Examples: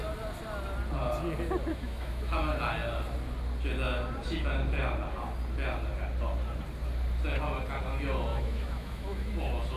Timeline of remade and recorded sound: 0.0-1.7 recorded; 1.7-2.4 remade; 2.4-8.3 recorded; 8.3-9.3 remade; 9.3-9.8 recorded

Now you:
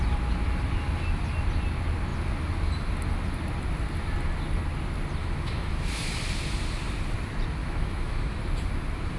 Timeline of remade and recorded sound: 0.0-5.2 recorded; 5.2-6.1 remade; 6.1-7.6 recorded; 7.6-8.4 remade; 8.4-9.2 recorded

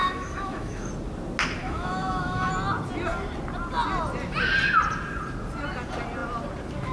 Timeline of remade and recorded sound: 0.0-0.9 remade; 0.9-1.6 recorded; 1.6-2.5 remade; 2.5-6.9 recorded

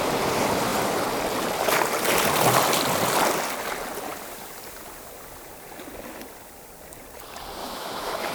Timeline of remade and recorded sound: 0.0-7.6 recorded; 7.6-8.3 remade

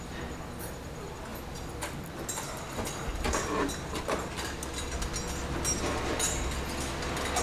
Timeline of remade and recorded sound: 0.0-7.4 recorded

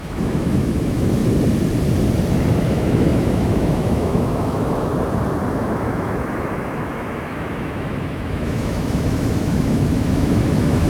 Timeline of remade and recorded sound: 0.0-1.2 remade; 1.2-2.6 recorded; 2.6-4.9 remade; 4.9-5.5 recorded; 5.5-10.9 remade

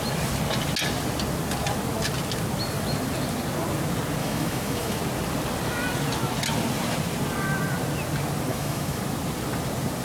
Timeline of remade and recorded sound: 0.0-4.2 recorded; 4.2-5.0 remade; 5.0-8.5 recorded; 8.5-9.0 remade; 9.0-10.0 recorded

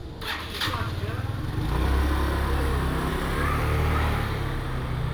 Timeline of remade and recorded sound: 0.0-5.1 recorded